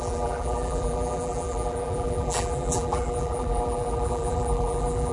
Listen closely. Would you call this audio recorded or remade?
remade